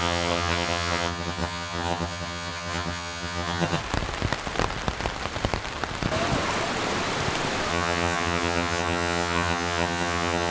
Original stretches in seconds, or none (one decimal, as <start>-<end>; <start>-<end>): 3.8-7.7